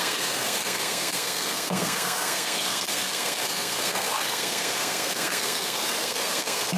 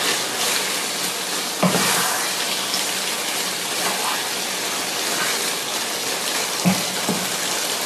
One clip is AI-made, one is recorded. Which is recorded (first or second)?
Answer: second